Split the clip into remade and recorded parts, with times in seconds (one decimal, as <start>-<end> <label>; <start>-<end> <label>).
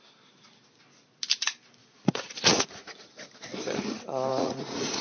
0.0-1.8 recorded; 1.8-3.0 remade; 3.0-4.3 recorded; 4.3-5.0 remade